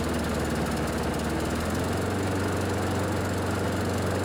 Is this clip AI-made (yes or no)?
no